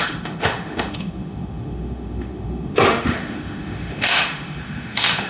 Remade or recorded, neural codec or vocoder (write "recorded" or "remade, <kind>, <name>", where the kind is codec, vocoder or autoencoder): remade, autoencoder, DAC-VAE